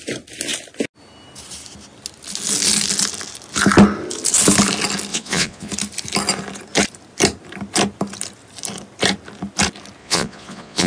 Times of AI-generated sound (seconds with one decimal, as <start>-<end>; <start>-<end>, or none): 5.1-5.7; 10.0-10.9